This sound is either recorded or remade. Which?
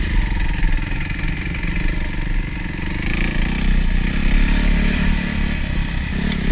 recorded